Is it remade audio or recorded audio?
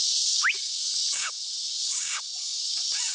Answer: remade